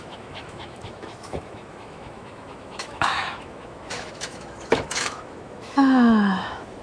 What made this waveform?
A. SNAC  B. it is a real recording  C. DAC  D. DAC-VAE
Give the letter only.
D